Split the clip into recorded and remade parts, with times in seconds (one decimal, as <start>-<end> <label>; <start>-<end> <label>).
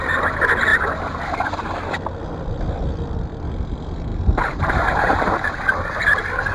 0.0-4.1 recorded; 4.1-5.5 remade; 5.5-6.5 recorded